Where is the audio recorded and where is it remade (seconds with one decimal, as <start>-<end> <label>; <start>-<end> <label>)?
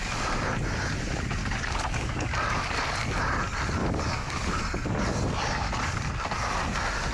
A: 0.0-1.4 recorded; 1.4-2.7 remade; 2.7-3.8 recorded; 3.8-5.0 remade; 5.0-7.1 recorded